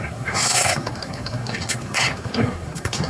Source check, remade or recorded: remade